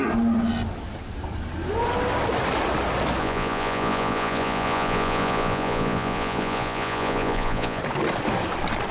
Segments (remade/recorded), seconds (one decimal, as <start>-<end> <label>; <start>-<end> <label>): 0.0-3.2 recorded; 3.2-7.8 remade; 7.8-8.9 recorded